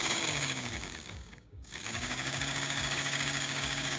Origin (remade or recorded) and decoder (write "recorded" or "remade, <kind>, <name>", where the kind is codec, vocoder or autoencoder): remade, codec, DAC